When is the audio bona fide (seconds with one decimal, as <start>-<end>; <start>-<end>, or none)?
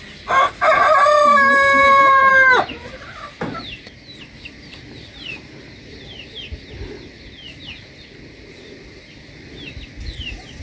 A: 0.0-1.8; 2.3-10.6